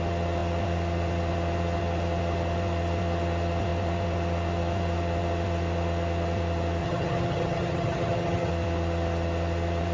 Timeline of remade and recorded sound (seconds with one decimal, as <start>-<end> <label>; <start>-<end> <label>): 0.0-6.8 recorded; 6.8-8.5 remade; 8.5-9.9 recorded